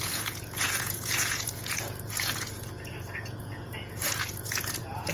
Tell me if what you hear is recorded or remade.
remade